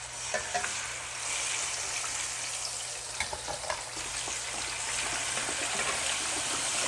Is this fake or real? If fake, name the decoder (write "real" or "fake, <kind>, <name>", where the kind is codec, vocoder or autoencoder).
real